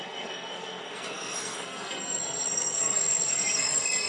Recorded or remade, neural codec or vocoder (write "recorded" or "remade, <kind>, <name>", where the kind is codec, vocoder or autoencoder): remade, codec, SNAC